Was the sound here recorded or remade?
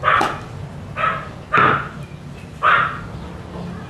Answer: recorded